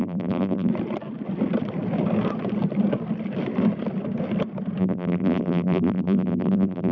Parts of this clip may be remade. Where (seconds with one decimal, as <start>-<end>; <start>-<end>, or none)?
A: 0.0-0.7; 4.8-6.9